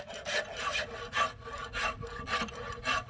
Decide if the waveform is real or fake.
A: real